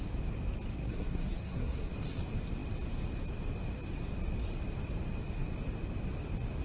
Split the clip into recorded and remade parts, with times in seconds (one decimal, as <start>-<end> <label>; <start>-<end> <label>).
0.0-0.8 recorded; 0.8-1.9 remade; 1.9-6.6 recorded